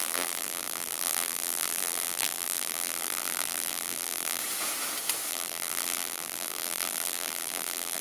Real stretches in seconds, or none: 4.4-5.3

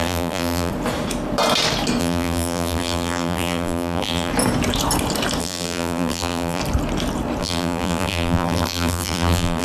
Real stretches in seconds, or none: 0.7-2.0; 4.3-5.4; 6.6-7.4

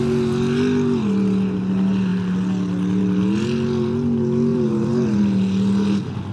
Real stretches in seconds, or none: 0.0-4.5; 5.2-6.3